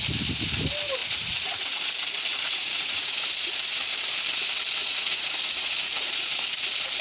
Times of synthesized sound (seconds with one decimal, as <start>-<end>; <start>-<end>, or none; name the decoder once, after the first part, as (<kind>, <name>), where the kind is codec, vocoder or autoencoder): 1.0-1.9 (vocoder, Vocos); 2.3-3.3; 4.8-6.4